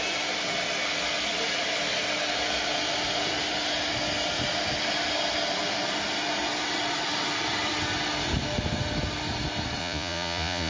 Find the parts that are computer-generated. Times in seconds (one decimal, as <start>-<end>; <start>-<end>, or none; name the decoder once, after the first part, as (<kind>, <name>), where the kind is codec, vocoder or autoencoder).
9.8-10.7 (vocoder, Vocos)